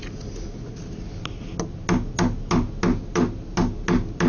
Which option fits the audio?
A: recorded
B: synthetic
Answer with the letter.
A